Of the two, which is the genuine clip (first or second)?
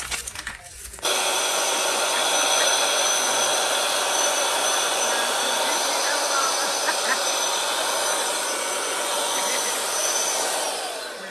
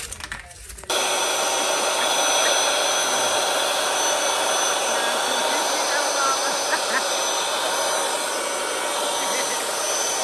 second